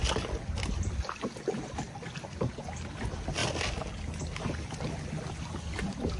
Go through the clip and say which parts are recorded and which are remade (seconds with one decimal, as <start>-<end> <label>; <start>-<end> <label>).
0.0-6.2 recorded